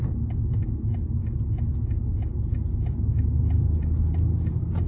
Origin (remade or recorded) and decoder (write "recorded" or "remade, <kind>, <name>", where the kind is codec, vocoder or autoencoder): recorded